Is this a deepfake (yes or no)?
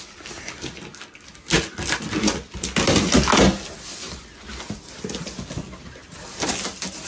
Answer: no